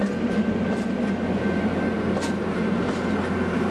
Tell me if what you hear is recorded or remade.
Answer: recorded